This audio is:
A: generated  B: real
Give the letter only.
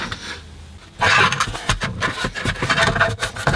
B